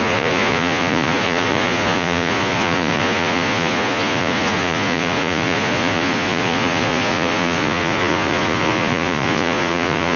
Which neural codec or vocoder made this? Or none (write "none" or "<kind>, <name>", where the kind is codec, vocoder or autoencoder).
vocoder, Vocos